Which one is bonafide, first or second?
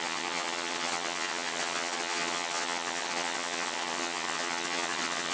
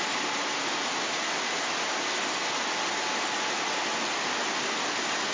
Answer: second